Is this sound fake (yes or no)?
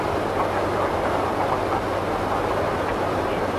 no